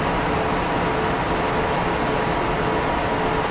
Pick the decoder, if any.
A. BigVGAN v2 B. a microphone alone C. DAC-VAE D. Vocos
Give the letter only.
B